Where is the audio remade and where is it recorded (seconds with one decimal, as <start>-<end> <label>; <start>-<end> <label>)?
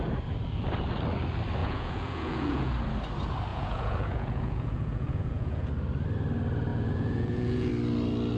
0.0-1.6 recorded; 1.6-2.7 remade; 2.7-3.5 recorded; 3.5-5.7 remade; 5.7-6.7 recorded; 6.7-7.7 remade; 7.7-8.4 recorded